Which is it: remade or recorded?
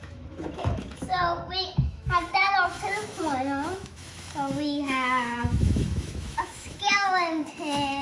remade